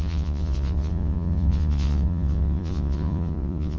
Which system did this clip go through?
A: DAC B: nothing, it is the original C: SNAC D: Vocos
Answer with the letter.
D